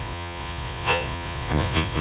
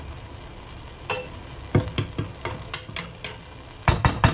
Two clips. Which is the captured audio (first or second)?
second